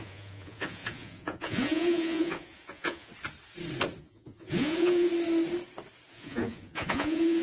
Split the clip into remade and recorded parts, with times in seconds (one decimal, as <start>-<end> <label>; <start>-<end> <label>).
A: 0.0-3.1 remade; 3.1-4.0 recorded; 4.0-5.1 remade; 5.1-6.1 recorded; 6.1-7.4 remade